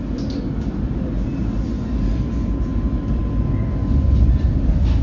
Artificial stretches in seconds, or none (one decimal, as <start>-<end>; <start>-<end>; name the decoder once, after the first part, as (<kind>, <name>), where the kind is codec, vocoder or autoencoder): none